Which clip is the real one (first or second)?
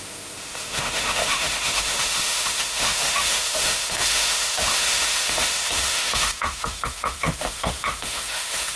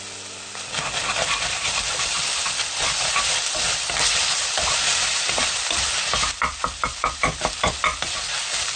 second